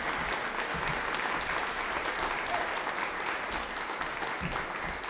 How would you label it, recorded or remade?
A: recorded